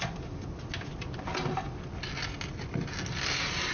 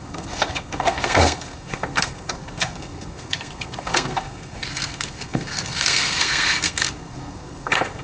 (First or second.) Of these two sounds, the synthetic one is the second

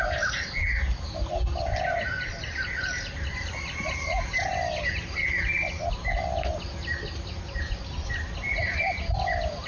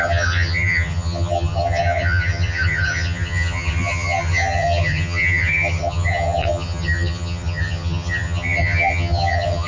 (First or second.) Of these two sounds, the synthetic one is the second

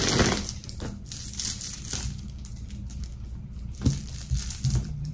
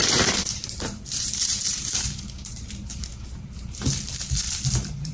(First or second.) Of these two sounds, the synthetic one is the second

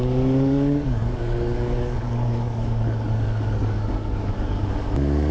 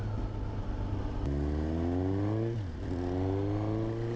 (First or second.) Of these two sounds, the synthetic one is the first